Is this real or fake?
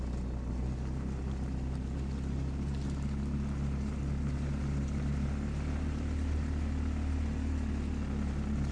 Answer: real